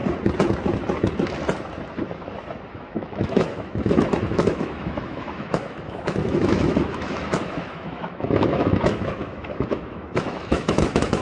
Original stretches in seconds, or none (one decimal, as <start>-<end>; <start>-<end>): 0.0-2.7